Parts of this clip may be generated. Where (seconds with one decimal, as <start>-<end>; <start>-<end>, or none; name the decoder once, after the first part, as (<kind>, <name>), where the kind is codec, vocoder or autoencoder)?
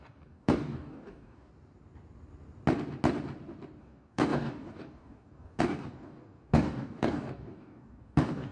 0.0-1.5 (codec, DAC); 3.8-8.5